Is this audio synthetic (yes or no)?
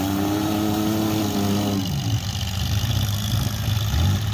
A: no